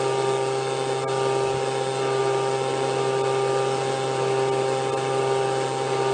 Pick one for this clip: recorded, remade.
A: recorded